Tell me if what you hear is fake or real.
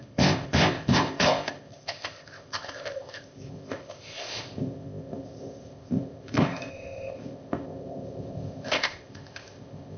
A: fake